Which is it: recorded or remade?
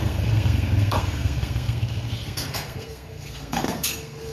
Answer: remade